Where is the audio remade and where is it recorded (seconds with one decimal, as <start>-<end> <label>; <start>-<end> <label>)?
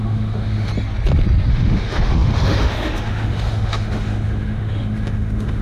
0.0-0.7 remade; 0.7-1.5 recorded; 1.5-5.6 remade